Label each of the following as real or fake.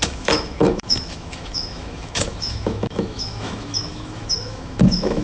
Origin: fake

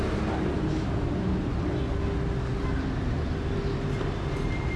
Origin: real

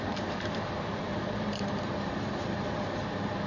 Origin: fake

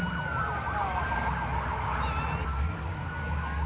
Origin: real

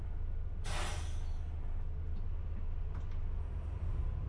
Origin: real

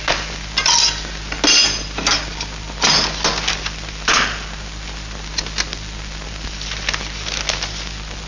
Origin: real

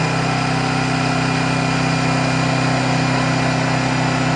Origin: real